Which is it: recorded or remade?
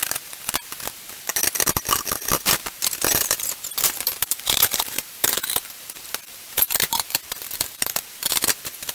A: remade